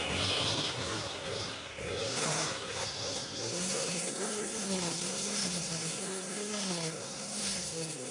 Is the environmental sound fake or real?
fake